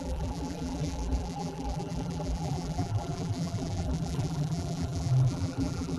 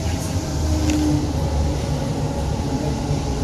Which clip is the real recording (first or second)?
second